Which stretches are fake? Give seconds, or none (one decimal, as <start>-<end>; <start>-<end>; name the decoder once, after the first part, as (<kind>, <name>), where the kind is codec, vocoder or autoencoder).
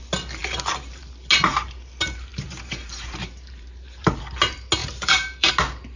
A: 2.3-4.2 (vocoder, BigVGAN v2); 4.8-5.5